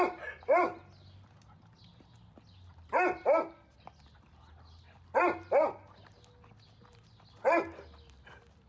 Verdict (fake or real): real